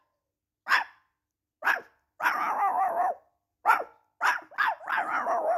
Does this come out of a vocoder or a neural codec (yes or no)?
no